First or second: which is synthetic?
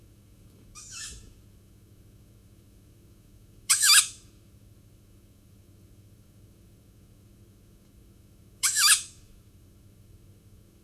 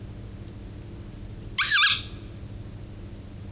first